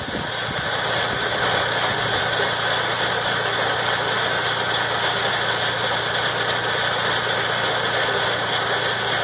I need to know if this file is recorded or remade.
recorded